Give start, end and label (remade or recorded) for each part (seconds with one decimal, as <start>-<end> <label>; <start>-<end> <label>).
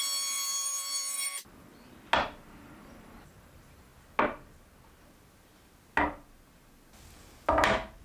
0.0-1.7 remade; 1.7-2.6 recorded; 2.6-3.9 remade; 3.9-8.0 recorded